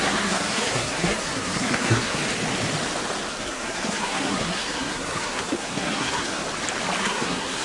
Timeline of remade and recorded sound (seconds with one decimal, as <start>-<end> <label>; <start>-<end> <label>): 0.0-2.2 remade; 2.2-3.3 recorded; 3.3-6.4 remade; 6.4-7.0 recorded; 7.0-7.6 remade

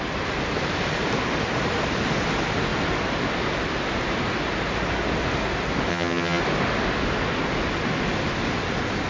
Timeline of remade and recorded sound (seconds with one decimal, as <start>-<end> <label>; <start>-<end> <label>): 0.0-5.9 recorded; 5.9-6.4 remade; 6.4-9.1 recorded

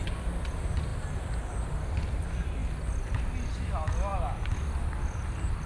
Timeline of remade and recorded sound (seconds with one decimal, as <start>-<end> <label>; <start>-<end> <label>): 0.0-5.7 recorded

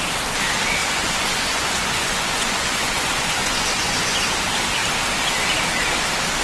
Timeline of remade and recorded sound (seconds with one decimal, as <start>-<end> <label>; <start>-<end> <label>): 0.0-0.8 recorded; 0.8-4.3 remade; 4.3-6.4 recorded

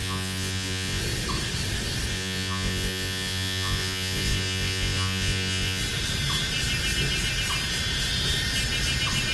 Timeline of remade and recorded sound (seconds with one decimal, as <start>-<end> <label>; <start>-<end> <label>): 0.0-1.0 remade; 1.0-2.1 recorded; 2.1-5.8 remade; 5.8-9.3 recorded

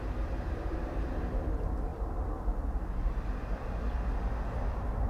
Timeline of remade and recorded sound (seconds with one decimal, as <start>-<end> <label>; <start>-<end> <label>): 0.0-1.9 remade; 1.9-5.1 recorded